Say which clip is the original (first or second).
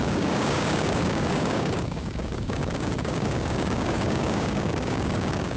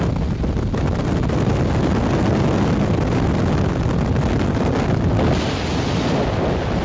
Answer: second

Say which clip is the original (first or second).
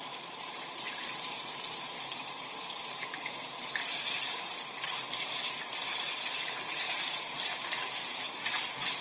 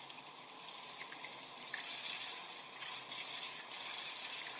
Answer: second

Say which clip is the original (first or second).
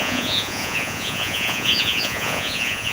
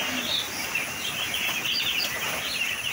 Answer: second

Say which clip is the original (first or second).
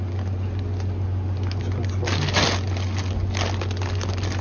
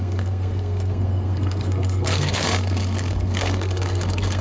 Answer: first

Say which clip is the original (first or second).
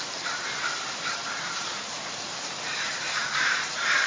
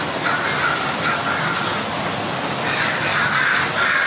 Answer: second